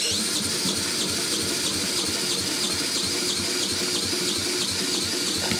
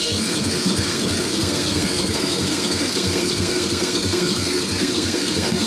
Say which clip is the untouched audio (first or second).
first